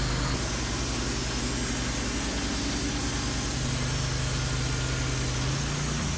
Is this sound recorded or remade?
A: recorded